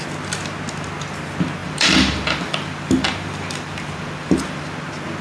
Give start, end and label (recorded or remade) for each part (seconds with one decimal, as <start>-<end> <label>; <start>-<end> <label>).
0.0-1.6 recorded; 1.6-4.7 remade; 4.7-5.2 recorded